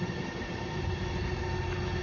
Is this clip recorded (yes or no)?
yes